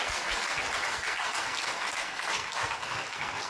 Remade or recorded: remade